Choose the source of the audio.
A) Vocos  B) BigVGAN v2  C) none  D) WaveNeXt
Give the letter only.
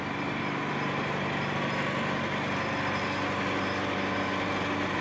C